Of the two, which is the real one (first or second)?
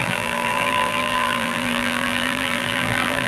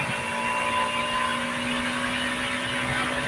second